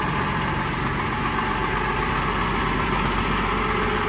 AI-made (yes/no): no